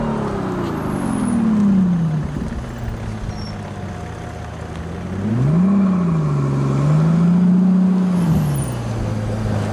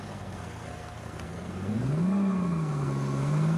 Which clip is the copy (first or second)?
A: second